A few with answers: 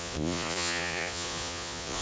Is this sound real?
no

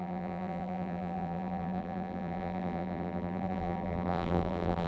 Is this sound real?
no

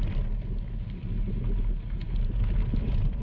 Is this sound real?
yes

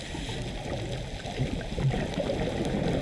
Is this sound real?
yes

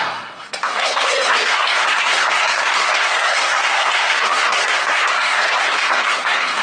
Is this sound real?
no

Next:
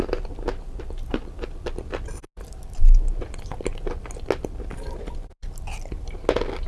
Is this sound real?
yes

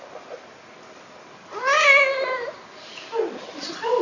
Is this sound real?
yes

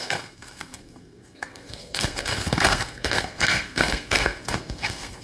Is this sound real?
no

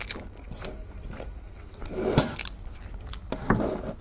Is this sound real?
yes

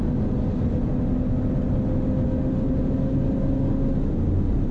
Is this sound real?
yes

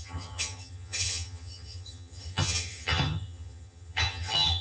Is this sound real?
no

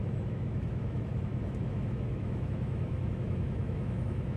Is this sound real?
no